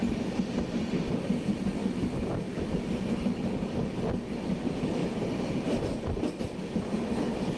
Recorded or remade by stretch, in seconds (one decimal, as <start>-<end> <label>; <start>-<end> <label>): 0.0-5.0 recorded; 5.0-6.4 remade; 6.4-7.6 recorded